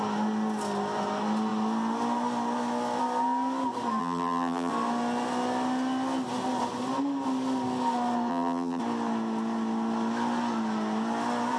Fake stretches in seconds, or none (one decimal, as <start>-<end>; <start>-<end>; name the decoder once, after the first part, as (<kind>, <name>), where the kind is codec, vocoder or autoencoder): 4.0-4.7 (vocoder, BigVGAN v2); 8.3-8.8

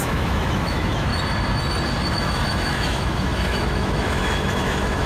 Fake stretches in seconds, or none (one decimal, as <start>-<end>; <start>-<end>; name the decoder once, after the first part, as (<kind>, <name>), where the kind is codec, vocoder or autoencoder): 0.0-1.1 (autoencoder, DAC-VAE); 2.1-5.1

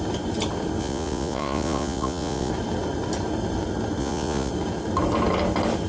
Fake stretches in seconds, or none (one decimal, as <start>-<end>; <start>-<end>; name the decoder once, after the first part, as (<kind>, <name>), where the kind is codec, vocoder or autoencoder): 0.8-2.5 (vocoder, Vocos); 4.0-4.5

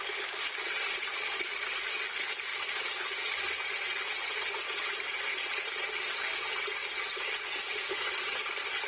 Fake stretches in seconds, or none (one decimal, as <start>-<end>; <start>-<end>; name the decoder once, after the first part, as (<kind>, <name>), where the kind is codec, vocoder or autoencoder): 0.6-1.9 (vocoder, BigVGAN v2); 5.3-8.0

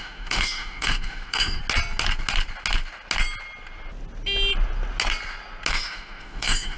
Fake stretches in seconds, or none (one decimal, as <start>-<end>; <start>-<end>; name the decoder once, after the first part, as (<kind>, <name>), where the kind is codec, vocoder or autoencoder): 0.0-1.6 (autoencoder, DAC-VAE); 5.7-6.8

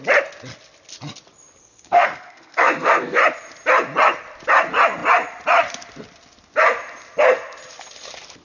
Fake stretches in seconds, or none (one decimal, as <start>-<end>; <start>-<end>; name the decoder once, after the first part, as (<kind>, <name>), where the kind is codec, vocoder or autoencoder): 1.6-3.2 (codec, SNAC)

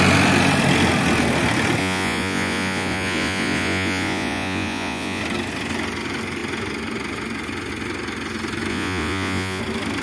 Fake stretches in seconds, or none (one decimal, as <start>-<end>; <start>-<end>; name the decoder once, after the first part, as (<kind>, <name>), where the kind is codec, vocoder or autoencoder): 1.8-5.2 (vocoder, Vocos); 8.7-9.6